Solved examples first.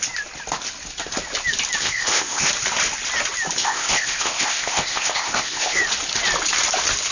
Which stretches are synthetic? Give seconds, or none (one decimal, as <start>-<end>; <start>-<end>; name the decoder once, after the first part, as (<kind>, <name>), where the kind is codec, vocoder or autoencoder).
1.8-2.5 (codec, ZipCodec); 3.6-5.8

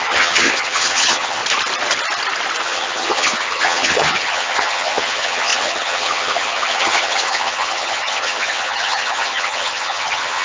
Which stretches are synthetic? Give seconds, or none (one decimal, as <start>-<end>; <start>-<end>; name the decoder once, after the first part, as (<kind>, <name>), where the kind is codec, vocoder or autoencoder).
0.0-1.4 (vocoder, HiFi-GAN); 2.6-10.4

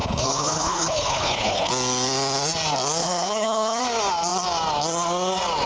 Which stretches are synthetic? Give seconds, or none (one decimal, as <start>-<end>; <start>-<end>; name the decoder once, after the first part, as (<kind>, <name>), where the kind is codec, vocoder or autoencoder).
0.0-1.7 (codec, HILCodec); 3.0-3.8

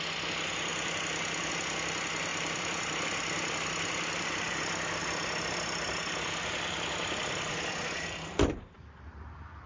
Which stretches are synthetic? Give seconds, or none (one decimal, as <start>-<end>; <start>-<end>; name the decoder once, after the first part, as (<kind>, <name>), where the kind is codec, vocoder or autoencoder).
0.7-1.5 (vocoder, BigVGAN v2); 2.3-4.3; 5.0-8.6

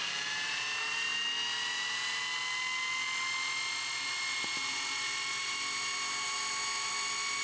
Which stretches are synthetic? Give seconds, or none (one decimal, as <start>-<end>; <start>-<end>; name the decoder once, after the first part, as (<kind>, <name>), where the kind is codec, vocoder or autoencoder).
none